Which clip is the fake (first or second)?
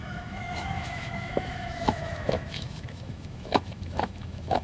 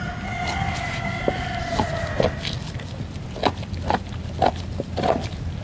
first